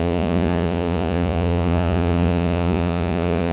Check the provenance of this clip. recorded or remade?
remade